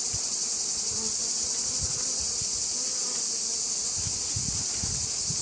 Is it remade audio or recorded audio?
recorded